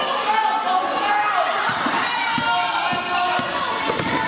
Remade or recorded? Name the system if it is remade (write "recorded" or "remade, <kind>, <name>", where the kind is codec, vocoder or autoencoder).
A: recorded